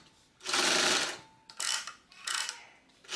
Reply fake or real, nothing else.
real